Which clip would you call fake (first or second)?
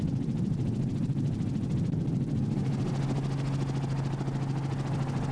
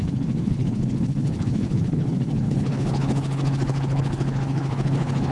second